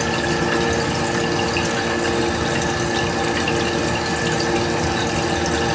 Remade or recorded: recorded